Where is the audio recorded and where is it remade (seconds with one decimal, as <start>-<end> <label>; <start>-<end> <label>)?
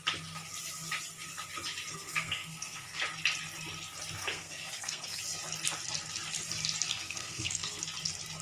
0.0-1.9 recorded; 1.9-3.0 remade; 3.0-4.2 recorded; 4.2-5.2 remade; 5.2-6.9 recorded; 6.9-7.8 remade; 7.8-8.4 recorded